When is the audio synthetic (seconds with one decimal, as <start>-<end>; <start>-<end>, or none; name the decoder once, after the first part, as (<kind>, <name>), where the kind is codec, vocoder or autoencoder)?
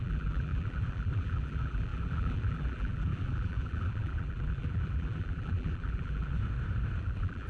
0.0-6.4 (vocoder, BigVGAN v2); 7.0-7.5